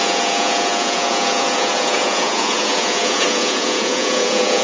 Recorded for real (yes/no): no